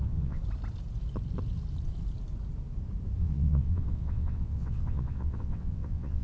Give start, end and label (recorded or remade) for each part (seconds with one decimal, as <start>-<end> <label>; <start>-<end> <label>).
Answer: 0.0-0.4 remade; 0.4-3.2 recorded; 3.2-6.2 remade